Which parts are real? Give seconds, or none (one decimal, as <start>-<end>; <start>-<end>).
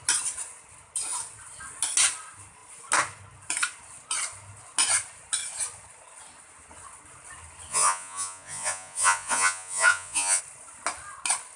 0.0-7.7; 10.4-11.6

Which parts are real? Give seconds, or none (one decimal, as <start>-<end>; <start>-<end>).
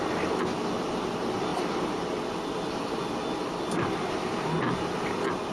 0.0-5.5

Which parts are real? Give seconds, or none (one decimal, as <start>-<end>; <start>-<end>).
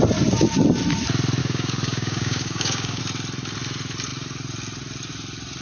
0.0-1.4; 3.0-5.6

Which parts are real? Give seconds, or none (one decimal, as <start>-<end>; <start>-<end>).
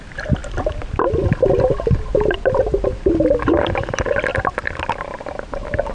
0.0-5.9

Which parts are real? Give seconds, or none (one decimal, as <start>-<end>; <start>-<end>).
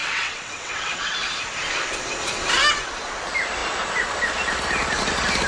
1.3-5.5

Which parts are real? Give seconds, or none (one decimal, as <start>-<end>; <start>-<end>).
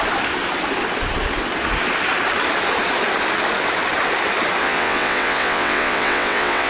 0.0-4.6